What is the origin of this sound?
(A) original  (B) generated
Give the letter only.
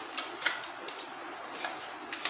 A